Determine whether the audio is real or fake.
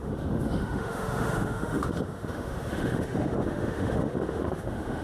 fake